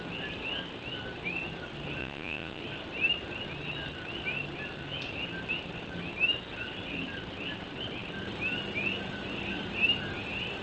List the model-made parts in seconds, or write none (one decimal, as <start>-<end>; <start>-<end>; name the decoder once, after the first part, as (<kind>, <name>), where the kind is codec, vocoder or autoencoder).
2.0-2.6 (vocoder, Vocos)